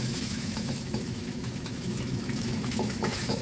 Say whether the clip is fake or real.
fake